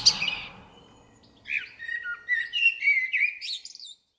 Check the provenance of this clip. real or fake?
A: real